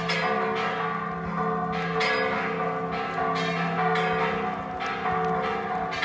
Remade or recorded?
recorded